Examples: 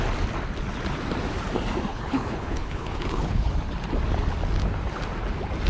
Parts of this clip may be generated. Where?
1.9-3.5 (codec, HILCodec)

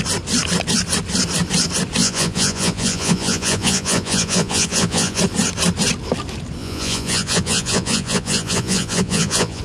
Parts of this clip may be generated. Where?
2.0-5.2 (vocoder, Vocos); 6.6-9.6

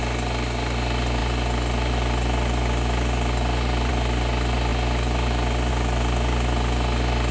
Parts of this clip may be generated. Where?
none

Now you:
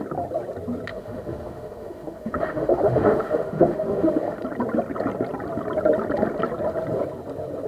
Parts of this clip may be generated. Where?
0.9-4.4 (autoencoder, DAC-VAE)

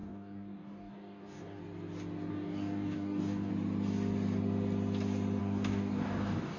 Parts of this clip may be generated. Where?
0.0-1.6 (codec, DAC); 2.3-3.5; 5.4-6.6

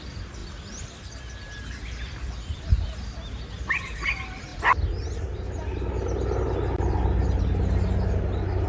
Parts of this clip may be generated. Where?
none